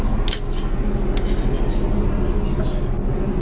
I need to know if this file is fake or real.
real